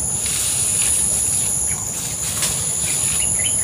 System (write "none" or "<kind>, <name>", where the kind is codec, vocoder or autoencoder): none